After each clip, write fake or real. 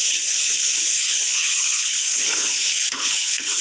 fake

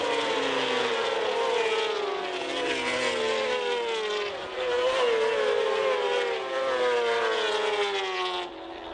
real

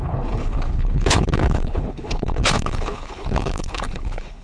fake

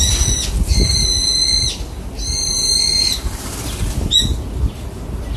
real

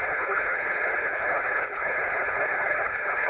fake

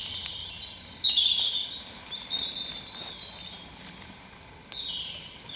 real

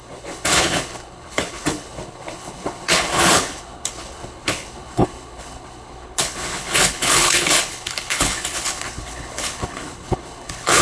fake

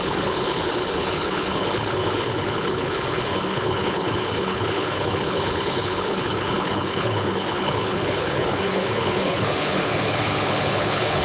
fake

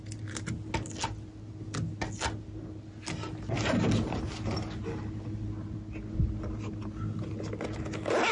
real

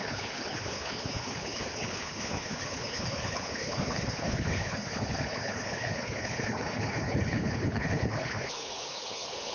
fake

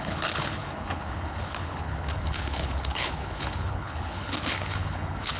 fake